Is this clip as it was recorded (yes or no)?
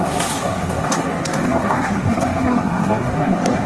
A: no